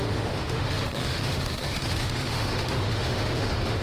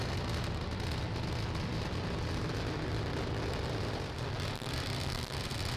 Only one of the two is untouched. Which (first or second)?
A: second